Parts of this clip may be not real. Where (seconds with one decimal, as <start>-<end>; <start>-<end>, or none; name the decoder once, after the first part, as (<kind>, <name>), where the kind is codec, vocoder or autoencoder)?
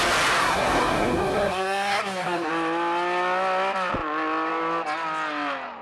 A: 0.4-2.5 (codec, SNAC)